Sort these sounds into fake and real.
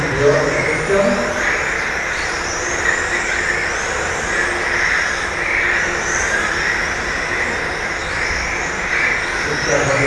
real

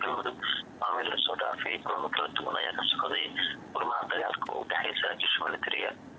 fake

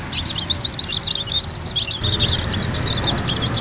real